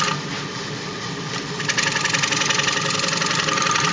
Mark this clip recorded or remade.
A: recorded